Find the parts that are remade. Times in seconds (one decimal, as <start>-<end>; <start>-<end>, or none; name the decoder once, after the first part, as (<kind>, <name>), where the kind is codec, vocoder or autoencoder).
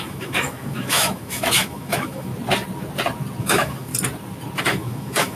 0.0-2.3 (autoencoder, DAC-VAE); 3.4-3.9; 4.6-5.4